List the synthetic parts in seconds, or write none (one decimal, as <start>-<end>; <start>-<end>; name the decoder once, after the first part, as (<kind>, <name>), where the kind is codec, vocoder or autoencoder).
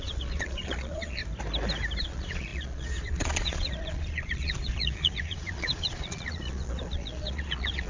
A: 0.0-1.2 (vocoder, Vocos); 2.0-7.9